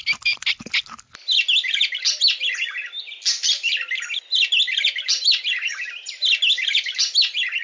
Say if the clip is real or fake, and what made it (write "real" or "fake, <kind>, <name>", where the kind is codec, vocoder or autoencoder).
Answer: real